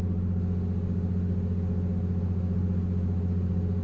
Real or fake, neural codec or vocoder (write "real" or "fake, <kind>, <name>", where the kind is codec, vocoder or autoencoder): real